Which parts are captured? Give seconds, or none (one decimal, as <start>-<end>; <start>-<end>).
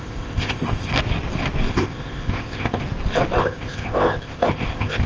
0.9-1.7; 2.8-3.4